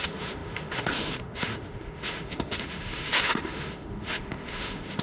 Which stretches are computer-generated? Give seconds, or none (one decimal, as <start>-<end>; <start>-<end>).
0.0-5.0